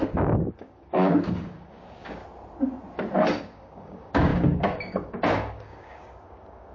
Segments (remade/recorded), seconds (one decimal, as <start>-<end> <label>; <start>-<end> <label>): 0.0-2.2 remade; 2.2-3.4 recorded; 3.4-6.7 remade

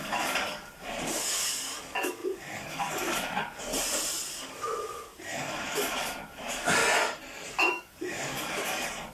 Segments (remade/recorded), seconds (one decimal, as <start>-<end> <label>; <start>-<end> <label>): 0.0-3.7 remade; 3.7-4.3 recorded; 4.3-6.8 remade; 6.8-7.5 recorded; 7.5-9.1 remade

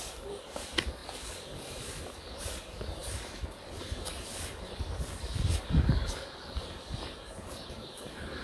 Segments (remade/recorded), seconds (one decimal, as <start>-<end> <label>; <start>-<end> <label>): 0.0-8.4 remade